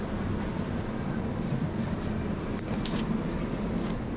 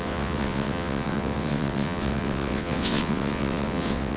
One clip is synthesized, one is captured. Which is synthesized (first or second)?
second